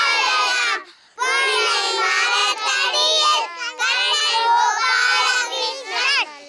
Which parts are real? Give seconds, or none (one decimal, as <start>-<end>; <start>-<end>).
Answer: 0.0-6.5